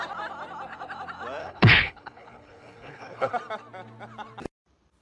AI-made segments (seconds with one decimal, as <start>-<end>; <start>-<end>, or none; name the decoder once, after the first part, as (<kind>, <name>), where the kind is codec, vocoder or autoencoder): 1.4-3.3 (codec, HILCodec)